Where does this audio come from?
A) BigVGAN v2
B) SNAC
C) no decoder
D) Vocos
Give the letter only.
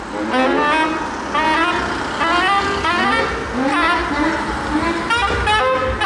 C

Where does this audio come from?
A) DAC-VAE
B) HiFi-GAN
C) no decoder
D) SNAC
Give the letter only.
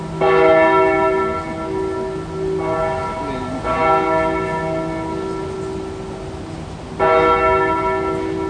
C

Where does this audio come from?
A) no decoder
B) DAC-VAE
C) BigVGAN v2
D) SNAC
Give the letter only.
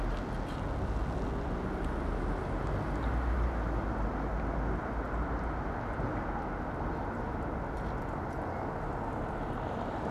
A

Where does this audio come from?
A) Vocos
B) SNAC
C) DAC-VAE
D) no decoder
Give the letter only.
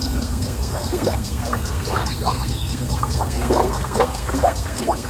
B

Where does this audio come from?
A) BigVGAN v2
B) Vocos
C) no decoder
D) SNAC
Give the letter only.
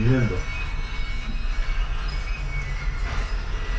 C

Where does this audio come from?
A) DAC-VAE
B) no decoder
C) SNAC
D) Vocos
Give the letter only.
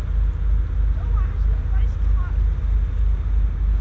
B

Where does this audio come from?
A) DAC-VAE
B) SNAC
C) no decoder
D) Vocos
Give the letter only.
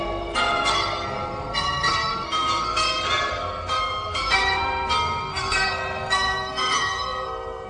B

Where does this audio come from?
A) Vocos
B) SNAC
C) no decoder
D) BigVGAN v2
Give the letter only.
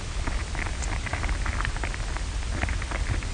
C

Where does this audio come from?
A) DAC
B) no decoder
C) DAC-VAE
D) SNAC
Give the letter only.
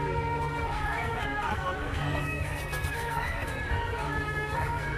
D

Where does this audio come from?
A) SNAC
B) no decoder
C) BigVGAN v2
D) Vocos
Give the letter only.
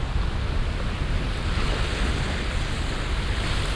B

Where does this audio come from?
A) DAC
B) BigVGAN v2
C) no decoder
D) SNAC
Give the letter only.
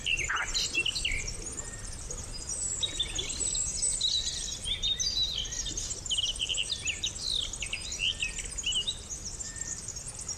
C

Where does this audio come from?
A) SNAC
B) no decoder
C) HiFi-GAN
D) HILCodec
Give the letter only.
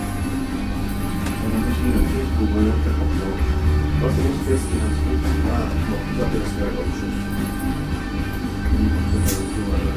B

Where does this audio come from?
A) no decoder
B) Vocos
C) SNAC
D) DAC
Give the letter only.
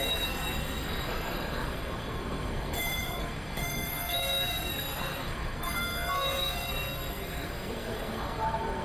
C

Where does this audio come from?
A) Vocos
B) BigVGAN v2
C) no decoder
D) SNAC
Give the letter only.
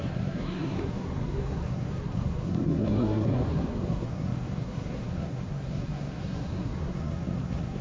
D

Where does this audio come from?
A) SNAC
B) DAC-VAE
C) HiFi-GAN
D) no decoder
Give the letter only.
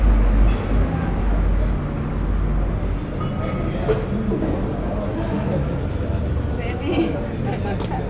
D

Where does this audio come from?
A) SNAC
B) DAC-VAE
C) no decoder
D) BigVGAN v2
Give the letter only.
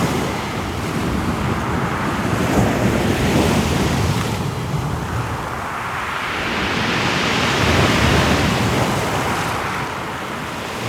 C